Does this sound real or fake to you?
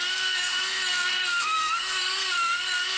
fake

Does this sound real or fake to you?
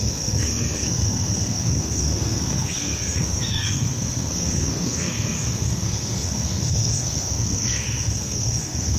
fake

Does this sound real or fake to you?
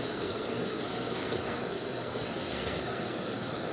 fake